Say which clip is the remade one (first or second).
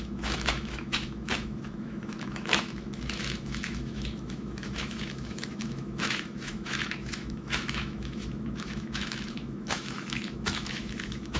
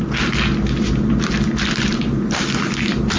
first